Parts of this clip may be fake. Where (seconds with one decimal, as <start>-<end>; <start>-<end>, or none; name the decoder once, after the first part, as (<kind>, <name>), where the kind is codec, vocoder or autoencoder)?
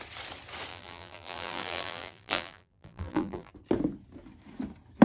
0.7-3.5 (vocoder, BigVGAN v2)